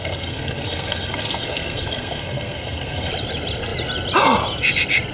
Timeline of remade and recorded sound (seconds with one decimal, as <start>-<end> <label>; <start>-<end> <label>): 0.0-3.1 remade; 3.1-5.1 recorded